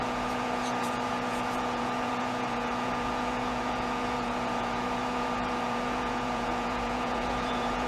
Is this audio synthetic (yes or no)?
yes